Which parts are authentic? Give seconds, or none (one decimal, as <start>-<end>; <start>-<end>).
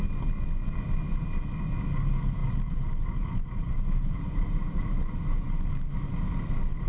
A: 0.0-2.4; 6.2-6.9